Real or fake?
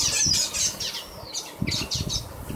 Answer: real